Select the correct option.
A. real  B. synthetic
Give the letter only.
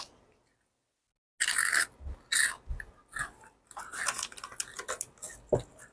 A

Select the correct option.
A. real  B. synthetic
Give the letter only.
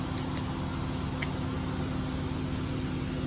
A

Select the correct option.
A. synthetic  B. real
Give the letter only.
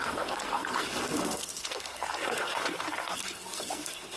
A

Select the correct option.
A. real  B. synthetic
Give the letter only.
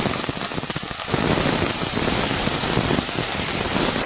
A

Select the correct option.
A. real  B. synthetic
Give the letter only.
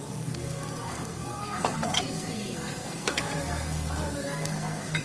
B